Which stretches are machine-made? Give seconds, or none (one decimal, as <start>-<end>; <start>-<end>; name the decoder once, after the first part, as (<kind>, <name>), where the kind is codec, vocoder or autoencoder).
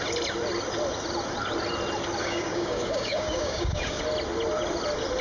2.2-4.0 (codec, DAC)